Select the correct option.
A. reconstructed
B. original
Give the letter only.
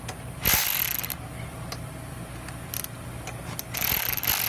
B